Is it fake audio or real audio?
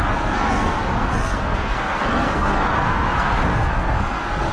fake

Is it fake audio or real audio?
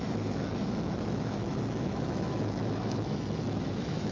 fake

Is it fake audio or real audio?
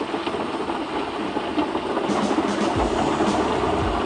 real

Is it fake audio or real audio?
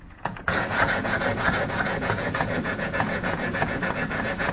fake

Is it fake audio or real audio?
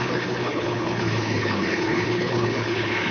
fake